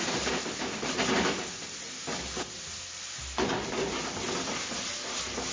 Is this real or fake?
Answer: real